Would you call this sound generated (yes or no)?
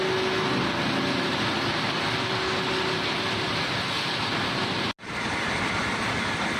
no